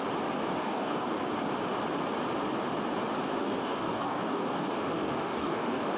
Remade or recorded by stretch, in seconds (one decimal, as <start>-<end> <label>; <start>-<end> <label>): 0.0-0.6 recorded; 0.6-1.3 remade; 1.3-3.4 recorded; 3.4-6.0 remade